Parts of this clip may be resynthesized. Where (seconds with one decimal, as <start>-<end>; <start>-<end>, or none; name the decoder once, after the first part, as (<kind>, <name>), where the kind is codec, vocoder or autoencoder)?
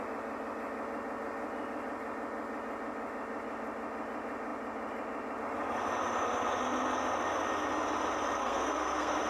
8.4-9.3 (codec, SNAC)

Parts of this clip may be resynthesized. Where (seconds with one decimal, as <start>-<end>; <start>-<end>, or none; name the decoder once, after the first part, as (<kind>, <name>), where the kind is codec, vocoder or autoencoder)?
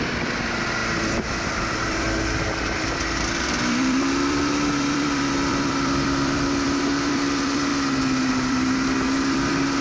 0.0-7.7 (vocoder, BigVGAN v2); 8.3-9.8